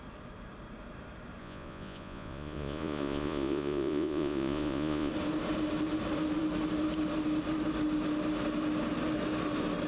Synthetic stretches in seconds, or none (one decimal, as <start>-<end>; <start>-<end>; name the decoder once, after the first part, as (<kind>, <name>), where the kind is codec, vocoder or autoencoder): 1.4-5.1 (vocoder, Vocos)